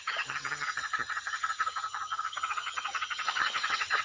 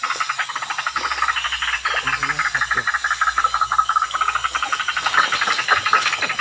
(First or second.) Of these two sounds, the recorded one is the second